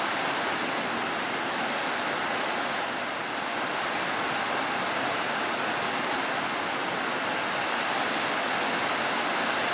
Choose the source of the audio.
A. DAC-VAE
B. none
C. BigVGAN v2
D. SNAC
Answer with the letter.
B